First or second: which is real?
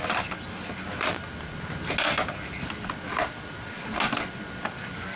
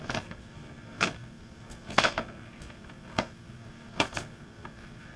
first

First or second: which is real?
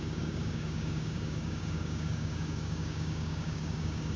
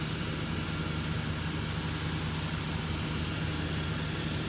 second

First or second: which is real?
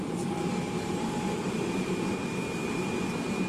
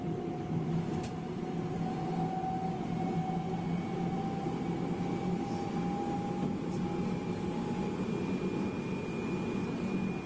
second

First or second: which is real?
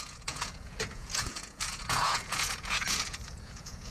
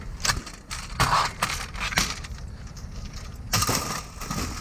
second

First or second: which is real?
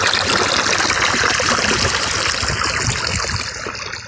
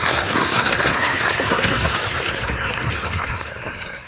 first